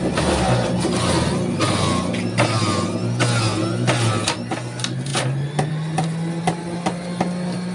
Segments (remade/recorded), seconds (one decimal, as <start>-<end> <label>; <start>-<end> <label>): 0.0-7.7 recorded